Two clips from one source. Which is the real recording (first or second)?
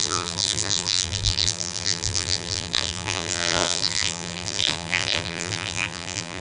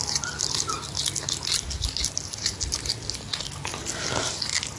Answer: second